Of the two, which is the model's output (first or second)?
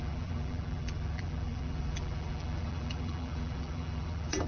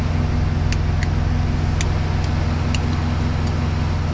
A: first